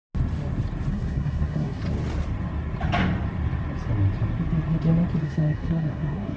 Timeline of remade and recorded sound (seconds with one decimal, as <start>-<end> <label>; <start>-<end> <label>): 0.0-0.9 recorded; 0.9-1.8 remade; 1.8-5.2 recorded; 5.2-6.4 remade